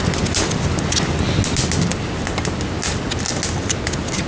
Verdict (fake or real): real